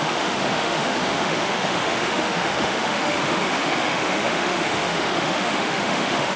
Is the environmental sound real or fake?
fake